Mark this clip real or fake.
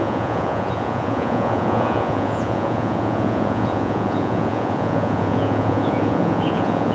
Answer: fake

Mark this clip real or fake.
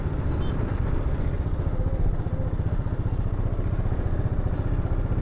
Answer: real